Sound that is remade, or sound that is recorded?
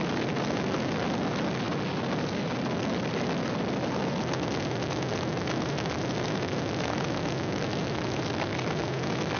recorded